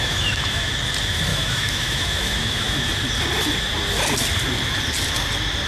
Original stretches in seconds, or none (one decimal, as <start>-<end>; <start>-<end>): 0.7-1.3; 2.9-5.7